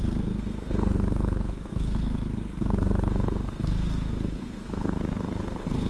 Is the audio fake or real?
fake